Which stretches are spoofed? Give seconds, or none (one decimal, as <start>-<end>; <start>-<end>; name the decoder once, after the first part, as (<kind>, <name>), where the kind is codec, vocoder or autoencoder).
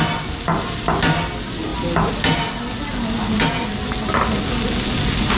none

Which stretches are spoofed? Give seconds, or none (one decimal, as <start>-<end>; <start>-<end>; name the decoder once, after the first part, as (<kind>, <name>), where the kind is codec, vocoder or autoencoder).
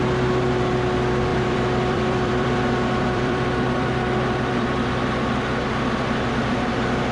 1.3-5.3 (vocoder, BigVGAN v2)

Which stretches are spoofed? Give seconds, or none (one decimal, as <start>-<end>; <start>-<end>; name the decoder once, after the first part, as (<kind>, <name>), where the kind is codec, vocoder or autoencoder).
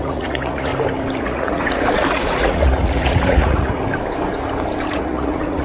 0.0-0.7 (vocoder, Vocos); 1.2-3.8; 4.9-5.6